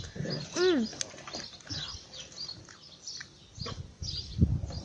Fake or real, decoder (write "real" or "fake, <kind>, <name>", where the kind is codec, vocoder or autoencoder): real